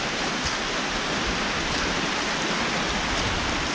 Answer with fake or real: real